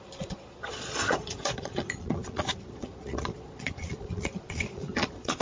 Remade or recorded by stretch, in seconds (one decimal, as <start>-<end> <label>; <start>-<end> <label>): 0.0-5.4 remade